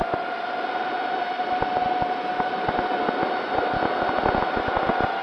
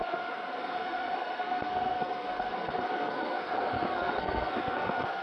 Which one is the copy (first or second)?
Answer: second